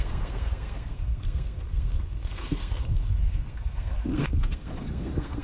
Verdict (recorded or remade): remade